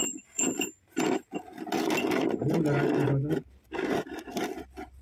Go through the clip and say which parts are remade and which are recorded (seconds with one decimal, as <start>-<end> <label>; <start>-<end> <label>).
0.0-1.5 remade; 1.5-4.5 recorded; 4.5-5.0 remade